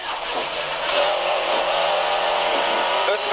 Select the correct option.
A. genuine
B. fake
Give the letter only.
B